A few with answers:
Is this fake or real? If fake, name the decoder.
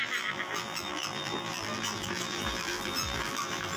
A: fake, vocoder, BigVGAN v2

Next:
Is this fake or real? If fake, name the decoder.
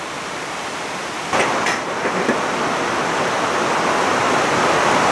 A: fake, vocoder, BigVGAN v2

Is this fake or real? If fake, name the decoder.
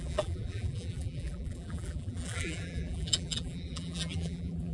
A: fake, vocoder, BigVGAN v2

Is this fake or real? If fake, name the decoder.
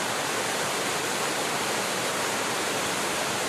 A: fake, vocoder, BigVGAN v2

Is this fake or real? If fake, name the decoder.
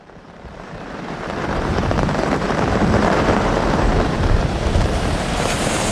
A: fake, vocoder, BigVGAN v2